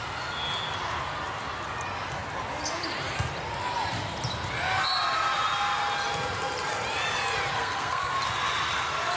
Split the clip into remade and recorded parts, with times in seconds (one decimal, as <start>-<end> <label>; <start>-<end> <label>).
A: 0.0-7.5 recorded; 7.5-8.1 remade; 8.1-9.2 recorded